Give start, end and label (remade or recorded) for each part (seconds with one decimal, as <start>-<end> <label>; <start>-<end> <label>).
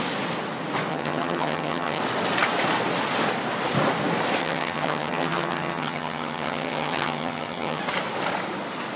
0.0-0.9 recorded; 0.9-2.0 remade; 2.0-4.4 recorded; 4.4-7.8 remade; 7.8-9.0 recorded